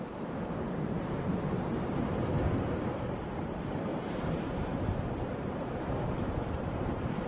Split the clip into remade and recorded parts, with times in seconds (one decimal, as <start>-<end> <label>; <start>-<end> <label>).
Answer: 0.0-7.3 remade